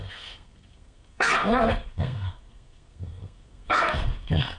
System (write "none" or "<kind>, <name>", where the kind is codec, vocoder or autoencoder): codec, SNAC